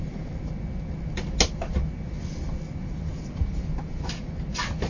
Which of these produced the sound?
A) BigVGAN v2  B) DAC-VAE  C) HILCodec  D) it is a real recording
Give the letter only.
D